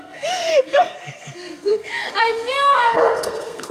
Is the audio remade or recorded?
remade